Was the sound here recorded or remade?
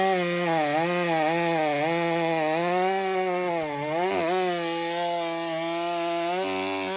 recorded